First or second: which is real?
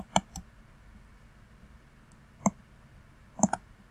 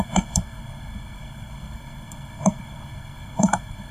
first